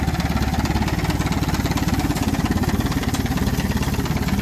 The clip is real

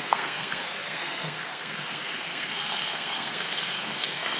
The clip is fake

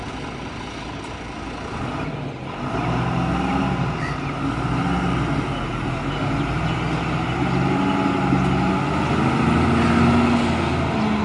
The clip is real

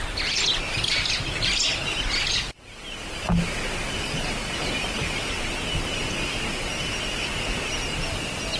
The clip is real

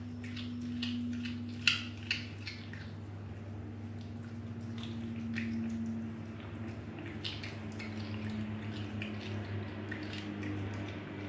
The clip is real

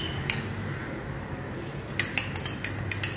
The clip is real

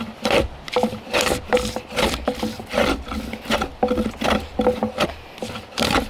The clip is real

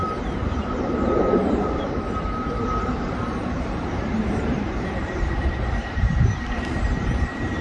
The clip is fake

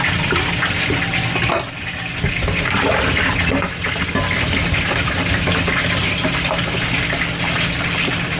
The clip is real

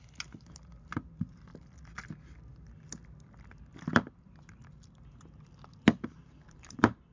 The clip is real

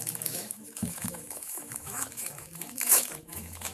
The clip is fake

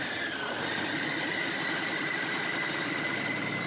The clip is real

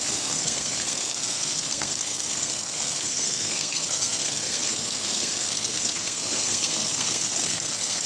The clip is fake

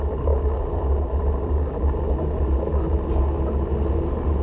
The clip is real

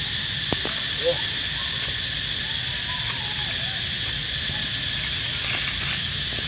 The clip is real